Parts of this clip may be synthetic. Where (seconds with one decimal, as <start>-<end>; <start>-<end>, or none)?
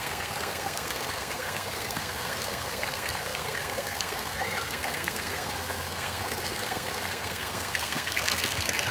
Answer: 0.0-8.9